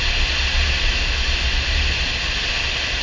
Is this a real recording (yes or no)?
yes